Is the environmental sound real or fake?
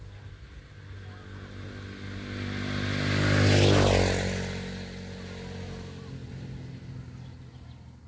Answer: real